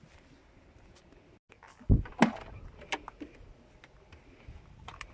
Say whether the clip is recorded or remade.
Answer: recorded